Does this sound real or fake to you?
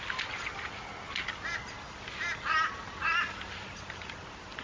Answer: real